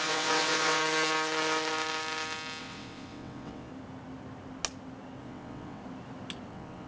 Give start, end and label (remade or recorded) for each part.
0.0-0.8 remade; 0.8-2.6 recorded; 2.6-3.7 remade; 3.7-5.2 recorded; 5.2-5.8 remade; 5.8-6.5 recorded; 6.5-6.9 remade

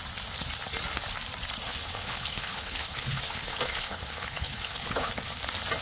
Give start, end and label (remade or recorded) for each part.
0.0-1.6 recorded; 1.6-5.1 remade; 5.1-5.8 recorded

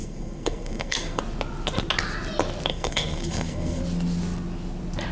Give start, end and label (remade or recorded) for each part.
0.0-1.2 remade; 1.2-2.7 recorded; 2.7-3.8 remade; 3.8-5.1 recorded

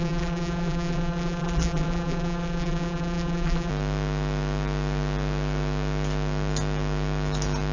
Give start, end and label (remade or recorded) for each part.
0.0-3.7 remade; 3.7-7.7 recorded

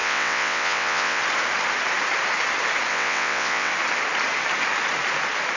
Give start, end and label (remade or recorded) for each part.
0.0-1.2 remade; 1.2-2.9 recorded; 2.9-3.7 remade; 3.7-5.6 recorded

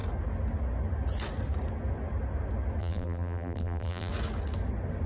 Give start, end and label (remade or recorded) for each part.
0.0-2.8 recorded; 2.8-4.1 remade; 4.1-5.1 recorded

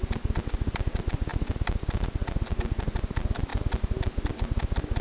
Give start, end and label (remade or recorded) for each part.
0.0-5.0 recorded

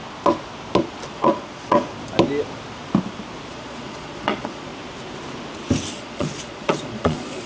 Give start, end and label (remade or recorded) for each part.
0.0-1.1 recorded; 1.1-1.9 remade; 1.9-3.5 recorded; 3.5-4.7 remade; 4.7-5.9 recorded; 5.9-7.5 remade